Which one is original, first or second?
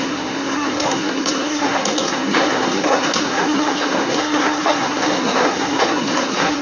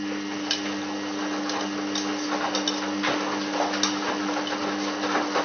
second